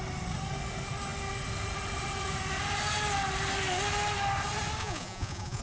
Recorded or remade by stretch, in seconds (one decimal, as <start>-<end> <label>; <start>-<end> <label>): 0.0-4.8 recorded; 4.8-5.6 remade